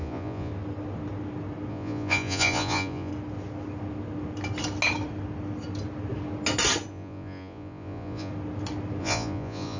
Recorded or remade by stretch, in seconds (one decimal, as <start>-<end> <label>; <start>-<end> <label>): 0.0-0.5 remade; 0.5-1.7 recorded; 1.7-3.1 remade; 3.1-6.9 recorded; 6.9-8.3 remade; 8.3-9.0 recorded; 9.0-9.8 remade

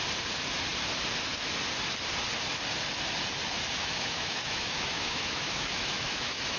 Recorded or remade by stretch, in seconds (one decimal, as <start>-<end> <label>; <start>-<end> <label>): 0.0-3.8 recorded; 3.8-6.6 remade

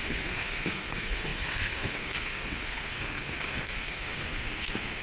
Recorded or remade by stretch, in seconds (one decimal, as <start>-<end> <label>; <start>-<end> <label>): 0.0-5.0 remade